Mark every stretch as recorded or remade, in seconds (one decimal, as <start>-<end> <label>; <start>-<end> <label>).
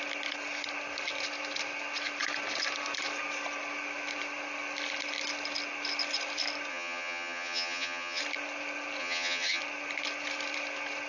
0.0-6.7 recorded; 6.7-8.2 remade; 8.2-9.0 recorded; 9.0-9.6 remade; 9.6-11.1 recorded